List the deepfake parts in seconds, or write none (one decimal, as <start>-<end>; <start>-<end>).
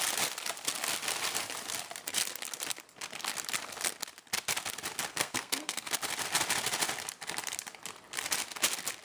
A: 5.1-5.9